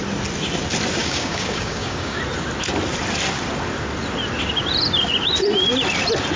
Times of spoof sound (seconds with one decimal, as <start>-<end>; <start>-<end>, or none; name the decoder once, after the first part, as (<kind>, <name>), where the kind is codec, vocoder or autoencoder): 1.0-2.2 (codec, DAC)